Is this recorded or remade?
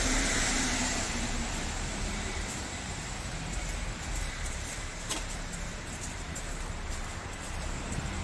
remade